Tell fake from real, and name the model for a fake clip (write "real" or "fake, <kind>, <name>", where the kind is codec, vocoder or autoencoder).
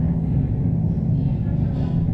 real